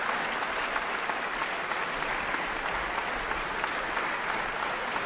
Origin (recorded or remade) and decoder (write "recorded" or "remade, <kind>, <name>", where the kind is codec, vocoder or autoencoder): recorded